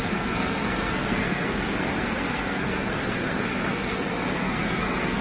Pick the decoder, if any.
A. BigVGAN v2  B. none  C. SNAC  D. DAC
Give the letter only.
C